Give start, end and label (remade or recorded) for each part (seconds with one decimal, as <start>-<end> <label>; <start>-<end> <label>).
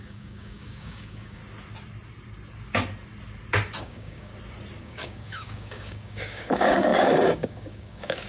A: 0.0-1.4 remade; 1.4-3.8 recorded; 3.8-4.3 remade; 4.3-4.8 recorded; 4.8-8.3 remade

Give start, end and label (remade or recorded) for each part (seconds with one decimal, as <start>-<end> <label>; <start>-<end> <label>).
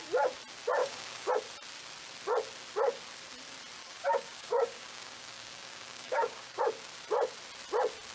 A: 0.0-0.8 recorded; 0.8-1.3 remade; 1.3-3.8 recorded; 3.8-6.6 remade; 6.6-8.1 recorded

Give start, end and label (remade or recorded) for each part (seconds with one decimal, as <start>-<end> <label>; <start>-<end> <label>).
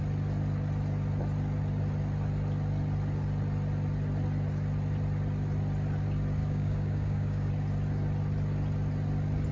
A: 0.0-6.4 recorded; 6.4-7.5 remade; 7.5-9.5 recorded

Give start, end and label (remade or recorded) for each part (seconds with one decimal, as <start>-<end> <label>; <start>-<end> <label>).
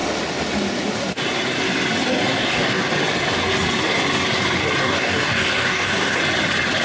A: 0.0-2.4 recorded; 2.4-2.9 remade; 2.9-4.8 recorded; 4.8-6.2 remade; 6.2-6.8 recorded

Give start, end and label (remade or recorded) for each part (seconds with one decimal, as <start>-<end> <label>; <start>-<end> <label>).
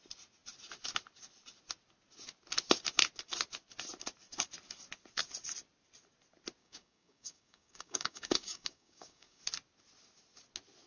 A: 0.0-6.6 recorded; 6.6-9.4 remade; 9.4-10.9 recorded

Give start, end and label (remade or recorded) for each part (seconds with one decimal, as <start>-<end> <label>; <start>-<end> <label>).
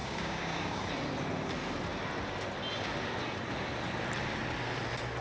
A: 0.0-0.8 remade; 0.8-5.2 recorded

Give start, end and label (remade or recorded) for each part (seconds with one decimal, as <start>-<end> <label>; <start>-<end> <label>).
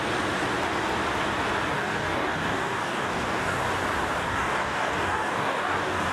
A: 0.0-1.7 recorded; 1.7-3.6 remade; 3.6-4.2 recorded; 4.2-6.1 remade